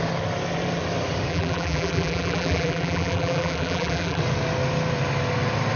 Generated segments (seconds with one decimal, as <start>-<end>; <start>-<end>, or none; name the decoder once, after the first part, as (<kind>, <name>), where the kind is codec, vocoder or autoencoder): 1.3-4.2 (vocoder, BigVGAN v2)